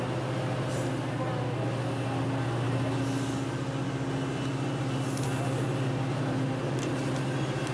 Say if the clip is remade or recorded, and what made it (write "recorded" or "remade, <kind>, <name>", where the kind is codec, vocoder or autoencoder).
recorded